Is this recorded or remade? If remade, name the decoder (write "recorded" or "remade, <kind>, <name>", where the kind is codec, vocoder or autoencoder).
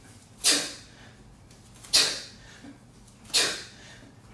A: recorded